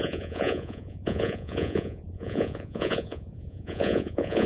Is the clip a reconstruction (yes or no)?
yes